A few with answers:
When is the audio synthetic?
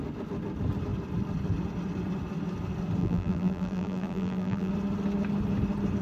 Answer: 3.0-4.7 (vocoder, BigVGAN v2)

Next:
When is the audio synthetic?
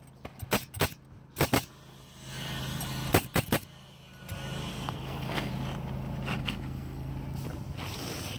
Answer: 4.7-5.5 (codec, SNAC); 6.4-7.1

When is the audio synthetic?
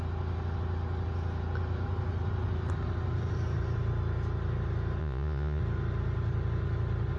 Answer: 5.0-5.6 (vocoder, Vocos)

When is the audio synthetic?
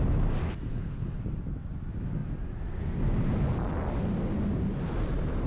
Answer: 0.7-1.2 (codec, HILCodec)